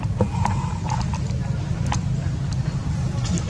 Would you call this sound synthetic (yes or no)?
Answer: no